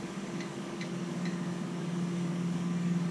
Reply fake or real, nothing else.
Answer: fake